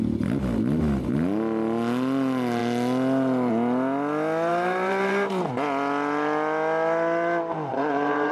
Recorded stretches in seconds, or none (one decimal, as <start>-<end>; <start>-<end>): 0.0-4.5; 5.5-7.7